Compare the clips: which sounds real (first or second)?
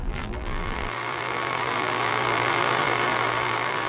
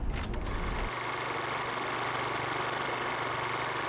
second